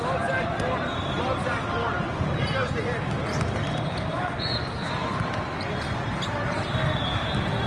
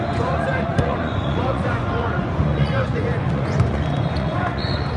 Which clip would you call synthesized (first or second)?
second